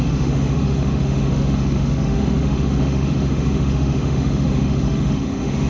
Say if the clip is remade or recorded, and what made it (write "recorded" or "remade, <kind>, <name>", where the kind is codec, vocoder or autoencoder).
remade, autoencoder, DAC-VAE